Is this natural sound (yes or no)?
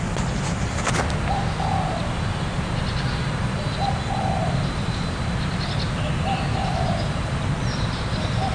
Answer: yes